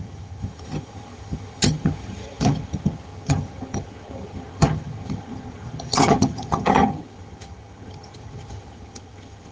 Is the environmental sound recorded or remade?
remade